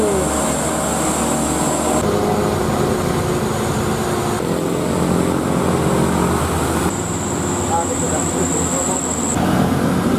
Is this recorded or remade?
recorded